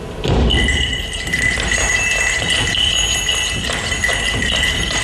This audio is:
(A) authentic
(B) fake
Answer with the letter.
A